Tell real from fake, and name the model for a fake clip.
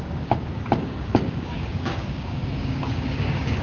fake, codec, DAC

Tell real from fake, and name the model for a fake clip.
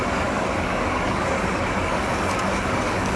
fake, codec, DAC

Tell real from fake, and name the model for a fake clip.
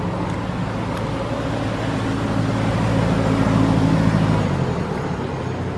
real